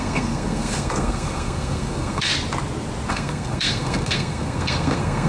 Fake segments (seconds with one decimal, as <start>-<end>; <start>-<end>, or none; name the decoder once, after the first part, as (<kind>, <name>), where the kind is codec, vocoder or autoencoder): 0.0-2.3 (codec, SNAC); 3.1-5.3